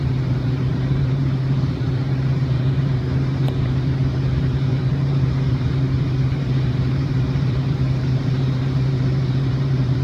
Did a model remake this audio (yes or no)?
yes